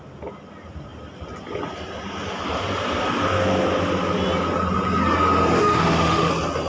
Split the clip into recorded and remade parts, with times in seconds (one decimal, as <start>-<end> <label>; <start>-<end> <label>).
0.0-5.6 recorded; 5.6-6.3 remade; 6.3-6.7 recorded